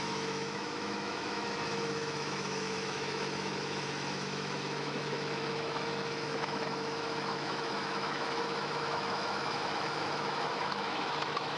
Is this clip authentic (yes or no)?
no